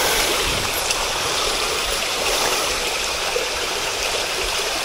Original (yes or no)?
no